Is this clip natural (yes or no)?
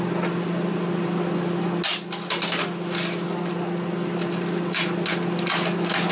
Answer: yes